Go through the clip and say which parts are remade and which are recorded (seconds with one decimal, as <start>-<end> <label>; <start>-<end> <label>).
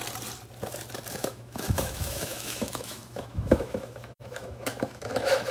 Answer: 0.0-1.1 recorded; 1.1-5.5 remade